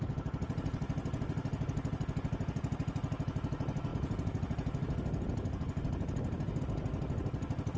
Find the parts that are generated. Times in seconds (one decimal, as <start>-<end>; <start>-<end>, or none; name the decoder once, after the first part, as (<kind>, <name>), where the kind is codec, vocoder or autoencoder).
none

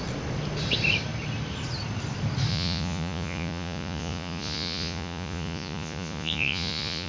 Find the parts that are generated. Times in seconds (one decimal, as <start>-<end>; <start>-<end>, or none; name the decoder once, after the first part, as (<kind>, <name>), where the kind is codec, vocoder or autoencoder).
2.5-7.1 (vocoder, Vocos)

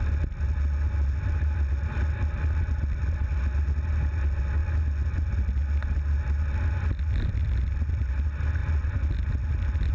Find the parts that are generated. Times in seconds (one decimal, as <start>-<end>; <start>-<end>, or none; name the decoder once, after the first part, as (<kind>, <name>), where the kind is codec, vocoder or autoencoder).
none

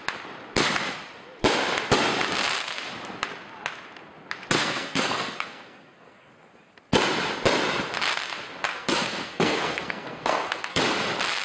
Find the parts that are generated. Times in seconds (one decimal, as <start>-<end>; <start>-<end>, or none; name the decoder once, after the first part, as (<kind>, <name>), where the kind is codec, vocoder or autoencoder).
4.6-6.3 (codec, SNAC); 8.7-10.8

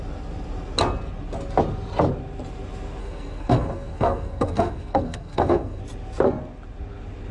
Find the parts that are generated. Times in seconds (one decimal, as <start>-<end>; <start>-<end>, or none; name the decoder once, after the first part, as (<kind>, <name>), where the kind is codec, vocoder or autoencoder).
3.0-5.8 (codec, SNAC)